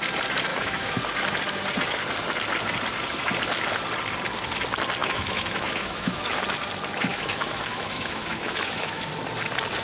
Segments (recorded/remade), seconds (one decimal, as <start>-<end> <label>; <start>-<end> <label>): 0.0-0.5 recorded; 0.5-1.0 remade; 1.0-5.0 recorded; 5.0-6.4 remade; 6.4-7.1 recorded; 7.1-9.1 remade; 9.1-9.8 recorded